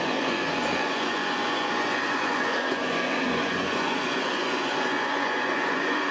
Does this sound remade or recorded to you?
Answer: remade